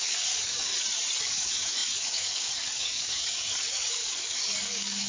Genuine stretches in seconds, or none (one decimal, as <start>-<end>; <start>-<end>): 0.7-1.2